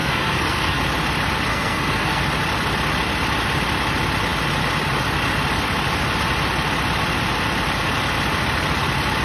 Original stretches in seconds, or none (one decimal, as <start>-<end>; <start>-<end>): 0.8-1.5; 2.2-9.2